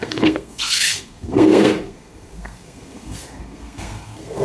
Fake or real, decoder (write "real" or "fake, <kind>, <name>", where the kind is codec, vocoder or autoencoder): fake, codec, SNAC